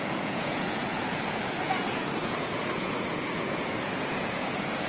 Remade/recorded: remade